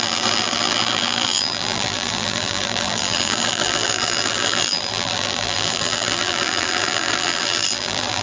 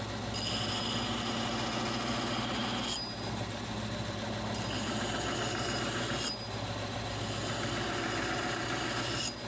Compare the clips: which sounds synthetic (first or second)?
first